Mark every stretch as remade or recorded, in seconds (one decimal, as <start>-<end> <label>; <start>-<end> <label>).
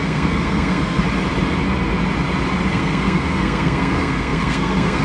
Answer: 0.0-1.0 remade; 1.0-2.7 recorded; 2.7-5.0 remade